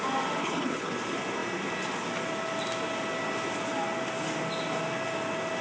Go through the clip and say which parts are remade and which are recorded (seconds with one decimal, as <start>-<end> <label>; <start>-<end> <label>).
0.0-0.4 recorded; 0.4-0.9 remade; 0.9-5.6 recorded